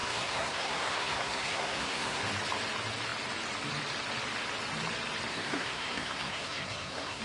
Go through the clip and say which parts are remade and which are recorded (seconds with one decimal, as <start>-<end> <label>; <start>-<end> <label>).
0.0-2.2 remade; 2.2-5.3 recorded; 5.3-7.2 remade